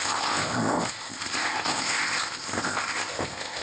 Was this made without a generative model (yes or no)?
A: no